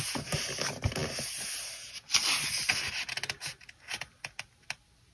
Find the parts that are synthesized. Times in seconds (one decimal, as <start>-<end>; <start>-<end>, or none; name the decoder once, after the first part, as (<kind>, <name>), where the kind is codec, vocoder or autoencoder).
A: none